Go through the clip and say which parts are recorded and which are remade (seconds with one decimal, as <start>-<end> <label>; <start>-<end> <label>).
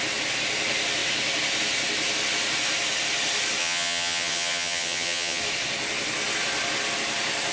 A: 0.0-3.6 recorded; 3.6-5.4 remade; 5.4-7.5 recorded